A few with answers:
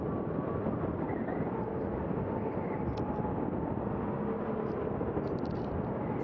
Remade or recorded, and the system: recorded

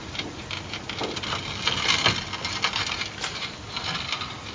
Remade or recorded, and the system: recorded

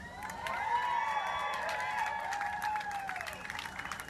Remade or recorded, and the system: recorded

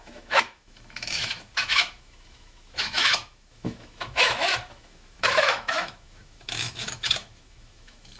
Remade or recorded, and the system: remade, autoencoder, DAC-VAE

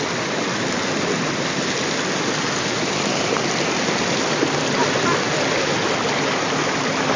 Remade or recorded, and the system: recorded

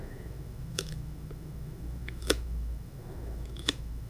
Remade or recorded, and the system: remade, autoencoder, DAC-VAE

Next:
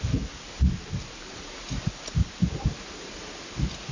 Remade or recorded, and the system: recorded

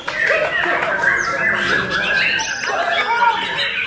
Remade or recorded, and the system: recorded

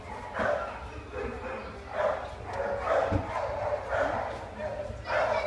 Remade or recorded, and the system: recorded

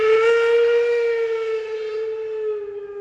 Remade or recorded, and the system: recorded